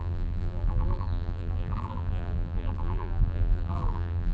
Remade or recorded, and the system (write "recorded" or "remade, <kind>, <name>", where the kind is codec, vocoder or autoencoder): remade, vocoder, BigVGAN v2